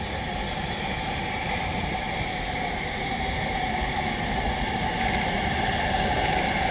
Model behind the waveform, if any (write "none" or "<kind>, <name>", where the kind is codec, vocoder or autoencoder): vocoder, BigVGAN v2